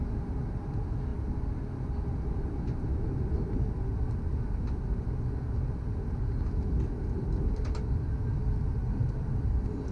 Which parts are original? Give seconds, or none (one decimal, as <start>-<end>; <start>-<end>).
0.0-9.9